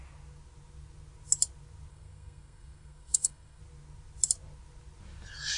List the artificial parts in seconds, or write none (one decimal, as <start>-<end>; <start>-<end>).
1.9-3.6